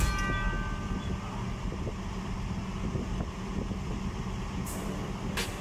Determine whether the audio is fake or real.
real